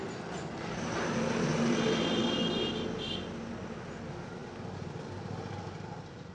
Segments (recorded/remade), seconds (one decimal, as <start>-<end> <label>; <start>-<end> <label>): 0.0-6.3 recorded